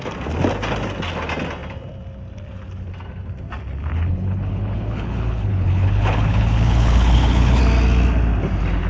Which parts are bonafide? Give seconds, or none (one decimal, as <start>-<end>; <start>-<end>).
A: 0.0-3.9; 7.6-8.9